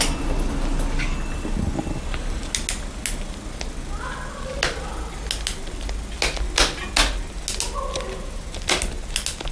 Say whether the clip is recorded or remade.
recorded